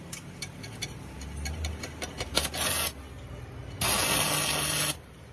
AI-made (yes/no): no